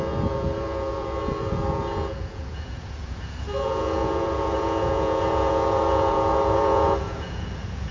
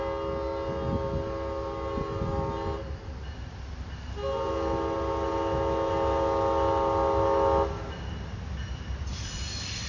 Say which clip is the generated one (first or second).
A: first